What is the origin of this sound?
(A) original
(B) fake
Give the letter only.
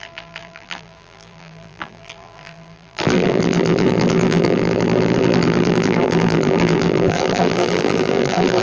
B